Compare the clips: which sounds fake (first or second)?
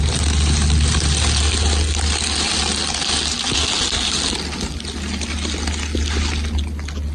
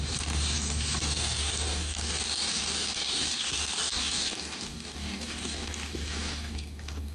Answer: second